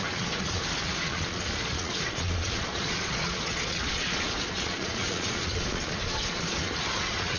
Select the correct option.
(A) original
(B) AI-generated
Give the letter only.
B